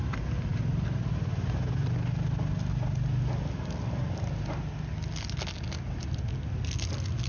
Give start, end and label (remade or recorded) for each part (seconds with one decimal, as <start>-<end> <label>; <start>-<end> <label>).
0.0-7.3 recorded